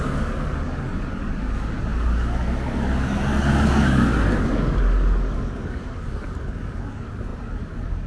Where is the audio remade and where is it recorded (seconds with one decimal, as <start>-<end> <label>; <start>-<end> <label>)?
0.0-8.1 remade